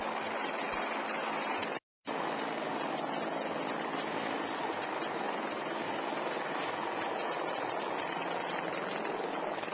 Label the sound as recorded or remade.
recorded